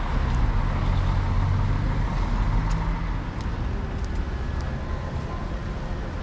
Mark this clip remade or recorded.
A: recorded